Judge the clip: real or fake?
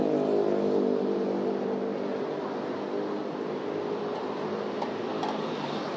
real